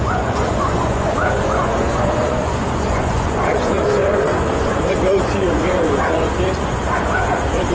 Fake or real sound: fake